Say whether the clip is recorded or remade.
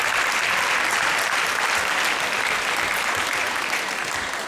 recorded